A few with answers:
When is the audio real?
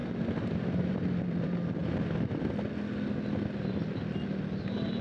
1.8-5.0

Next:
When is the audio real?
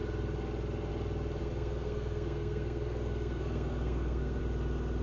0.0-1.4; 4.4-5.0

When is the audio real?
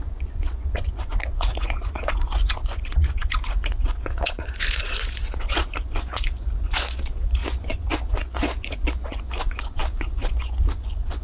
none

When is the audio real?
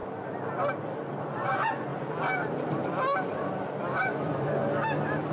0.0-1.2; 1.9-4.0; 4.6-5.3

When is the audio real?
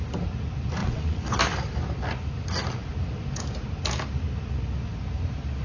0.0-0.8; 1.4-5.6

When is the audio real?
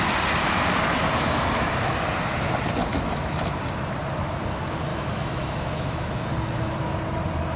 0.0-2.9; 3.4-4.9; 6.2-7.6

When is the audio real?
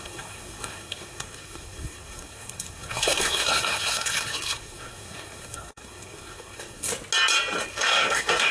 6.9-7.7